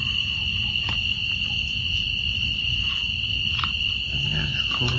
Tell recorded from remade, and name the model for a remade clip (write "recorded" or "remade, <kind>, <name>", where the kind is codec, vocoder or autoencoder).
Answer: recorded